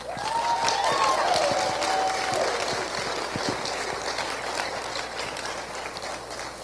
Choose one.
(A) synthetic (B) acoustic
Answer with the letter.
B